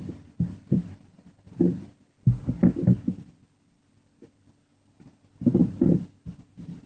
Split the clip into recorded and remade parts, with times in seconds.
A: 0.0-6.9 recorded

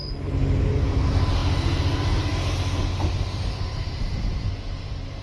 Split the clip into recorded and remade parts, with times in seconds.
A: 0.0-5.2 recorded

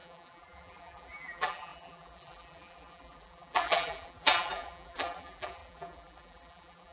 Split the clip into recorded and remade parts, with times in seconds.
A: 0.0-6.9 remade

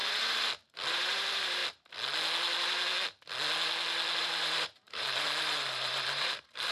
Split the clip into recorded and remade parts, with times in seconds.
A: 0.0-0.9 recorded; 0.9-1.6 remade; 1.6-4.2 recorded; 4.2-6.7 remade

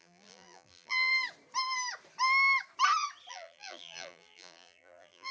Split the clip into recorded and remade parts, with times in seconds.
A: 0.0-1.1 remade; 1.1-3.3 recorded; 3.3-5.3 remade